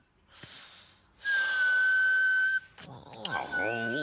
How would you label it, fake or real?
real